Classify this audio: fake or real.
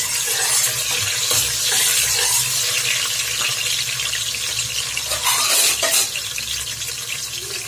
real